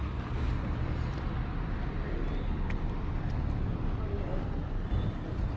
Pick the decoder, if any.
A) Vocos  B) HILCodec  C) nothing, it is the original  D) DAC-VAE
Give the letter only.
C